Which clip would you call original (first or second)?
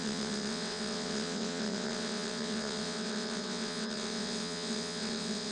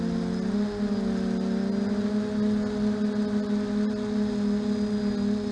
second